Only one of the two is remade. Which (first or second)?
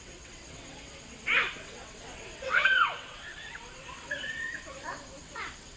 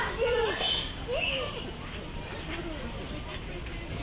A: first